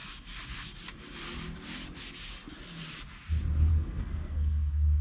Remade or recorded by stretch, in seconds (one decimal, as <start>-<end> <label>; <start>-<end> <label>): 0.0-3.7 recorded; 3.7-5.0 remade